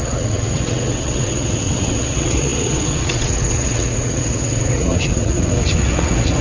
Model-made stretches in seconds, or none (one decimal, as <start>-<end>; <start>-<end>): 0.0-6.4